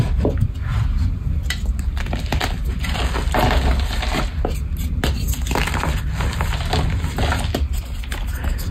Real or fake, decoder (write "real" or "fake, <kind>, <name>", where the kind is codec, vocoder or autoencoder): real